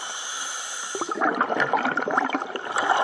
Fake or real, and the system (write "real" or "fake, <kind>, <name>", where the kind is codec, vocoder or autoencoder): real